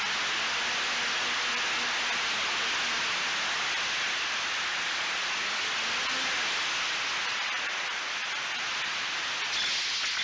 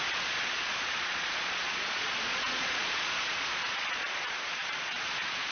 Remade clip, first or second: second